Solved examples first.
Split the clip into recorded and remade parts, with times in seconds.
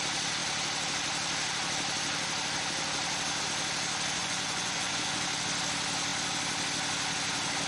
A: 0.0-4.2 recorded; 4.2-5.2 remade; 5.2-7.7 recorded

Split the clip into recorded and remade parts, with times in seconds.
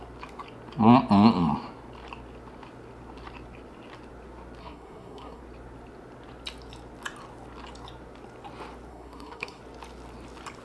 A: 0.0-4.6 recorded; 4.6-5.4 remade; 5.4-8.9 recorded; 8.9-9.6 remade; 9.6-10.6 recorded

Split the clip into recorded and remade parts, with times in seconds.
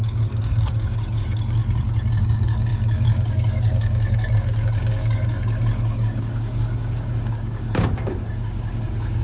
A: 0.0-1.6 remade; 1.6-2.2 recorded; 2.2-9.2 remade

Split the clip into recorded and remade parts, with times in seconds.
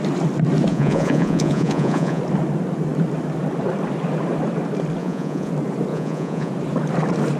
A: 0.0-0.7 recorded; 0.7-2.2 remade; 2.2-5.0 recorded; 5.0-5.5 remade; 5.5-5.9 recorded; 5.9-6.5 remade; 6.5-7.4 recorded